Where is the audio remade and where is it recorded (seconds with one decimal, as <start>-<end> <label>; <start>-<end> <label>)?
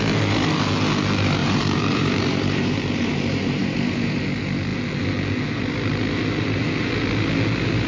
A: 0.0-1.4 recorded; 1.4-4.2 remade; 4.2-7.9 recorded